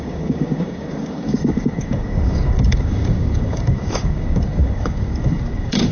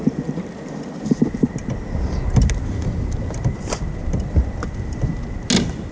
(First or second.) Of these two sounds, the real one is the second